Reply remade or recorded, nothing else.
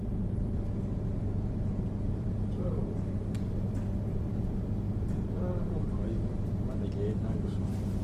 recorded